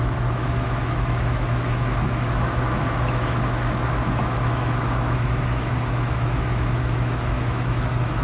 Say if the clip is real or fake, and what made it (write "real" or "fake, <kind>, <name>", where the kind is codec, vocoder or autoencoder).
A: fake, autoencoder, DAC-VAE